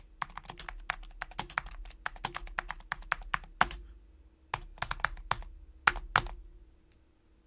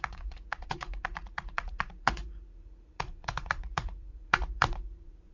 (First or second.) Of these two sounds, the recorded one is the first